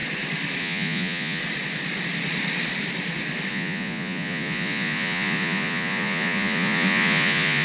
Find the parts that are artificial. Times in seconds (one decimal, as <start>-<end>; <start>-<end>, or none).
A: 0.6-1.4; 3.5-7.6